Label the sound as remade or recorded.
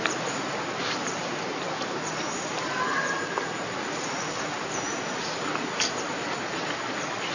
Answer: recorded